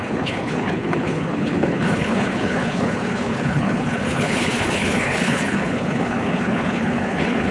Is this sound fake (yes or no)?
yes